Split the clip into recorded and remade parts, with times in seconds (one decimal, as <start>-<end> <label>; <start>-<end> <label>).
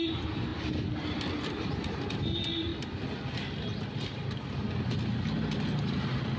0.0-6.4 recorded